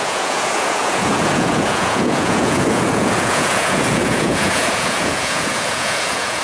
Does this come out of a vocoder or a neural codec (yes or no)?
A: yes